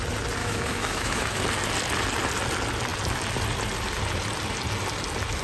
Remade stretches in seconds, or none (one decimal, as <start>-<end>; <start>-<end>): 0.4-1.4